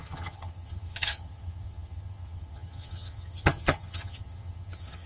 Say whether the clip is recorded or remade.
remade